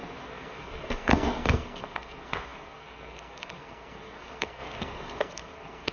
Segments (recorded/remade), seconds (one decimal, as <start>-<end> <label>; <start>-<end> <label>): 0.0-5.9 remade